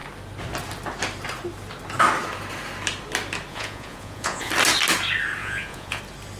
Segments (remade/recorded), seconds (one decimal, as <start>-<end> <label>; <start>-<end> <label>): 0.0-3.5 recorded; 3.5-4.5 remade; 4.5-5.4 recorded; 5.4-6.0 remade; 6.0-6.4 recorded